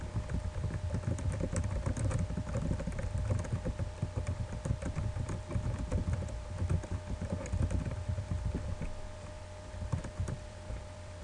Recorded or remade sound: remade